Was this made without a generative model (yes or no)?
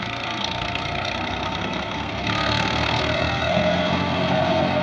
no